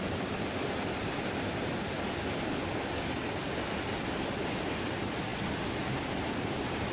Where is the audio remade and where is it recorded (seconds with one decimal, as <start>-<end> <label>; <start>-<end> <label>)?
0.0-6.9 recorded